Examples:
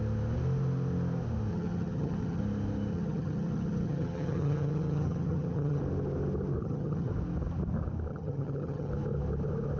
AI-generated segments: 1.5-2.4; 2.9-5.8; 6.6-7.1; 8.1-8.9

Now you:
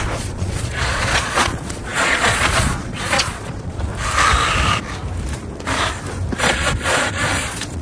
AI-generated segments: 0.0-3.9; 6.4-7.8

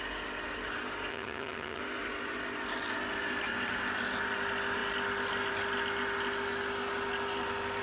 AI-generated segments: 1.1-1.8

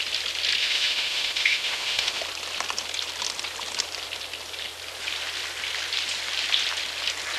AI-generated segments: 0.6-2.2

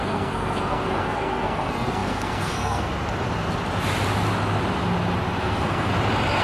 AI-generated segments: 0.0-2.9; 5.4-5.9

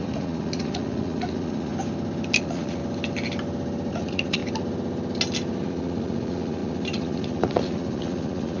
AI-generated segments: 0.0-1.7; 2.4-2.8; 3.9-4.4; 5.6-8.6

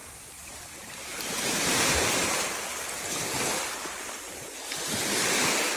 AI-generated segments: 0.0-2.1; 4.4-5.2

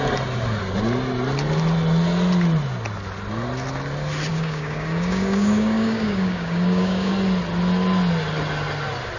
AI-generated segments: 4.3-7.1